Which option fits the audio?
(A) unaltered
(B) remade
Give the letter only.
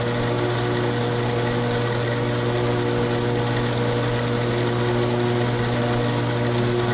A